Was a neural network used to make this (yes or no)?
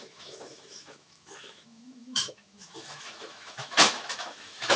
yes